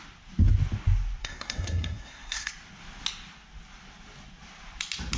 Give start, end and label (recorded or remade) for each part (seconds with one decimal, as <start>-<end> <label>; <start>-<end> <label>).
0.0-1.2 recorded; 1.2-2.5 remade; 2.5-5.2 recorded